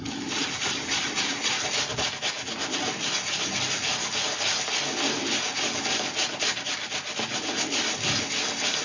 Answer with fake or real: real